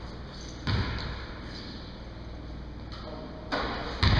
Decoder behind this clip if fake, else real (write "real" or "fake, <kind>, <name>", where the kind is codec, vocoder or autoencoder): real